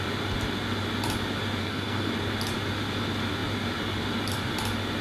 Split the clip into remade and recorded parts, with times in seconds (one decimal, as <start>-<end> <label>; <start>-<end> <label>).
0.0-1.6 recorded; 1.6-2.1 remade; 2.1-5.0 recorded